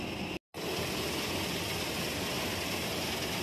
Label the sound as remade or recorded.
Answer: recorded